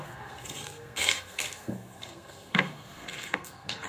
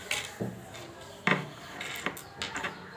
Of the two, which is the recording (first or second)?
second